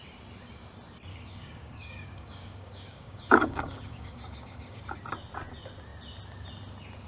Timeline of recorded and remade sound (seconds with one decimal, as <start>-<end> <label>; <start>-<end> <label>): 0.0-1.1 recorded; 1.1-4.8 remade; 4.8-7.1 recorded